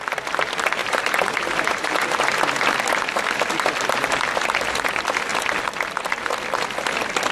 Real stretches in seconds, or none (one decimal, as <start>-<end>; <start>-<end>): 0.0-0.8; 2.4-7.3